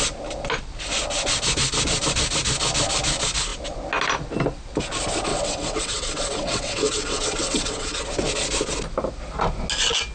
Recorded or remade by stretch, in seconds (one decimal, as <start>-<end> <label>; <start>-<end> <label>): 0.0-5.3 recorded; 5.3-8.0 remade; 8.0-10.1 recorded